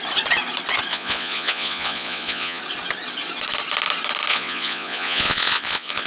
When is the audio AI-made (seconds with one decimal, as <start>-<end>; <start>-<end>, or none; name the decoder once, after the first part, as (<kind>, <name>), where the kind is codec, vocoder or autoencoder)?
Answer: 0.9-2.6 (vocoder, Vocos); 4.3-6.1